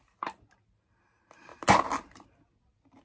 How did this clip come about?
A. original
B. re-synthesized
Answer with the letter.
A